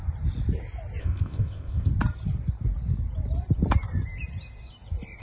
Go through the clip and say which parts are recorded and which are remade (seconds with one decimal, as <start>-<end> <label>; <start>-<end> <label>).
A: 0.0-1.0 recorded; 1.0-1.9 remade; 1.9-5.2 recorded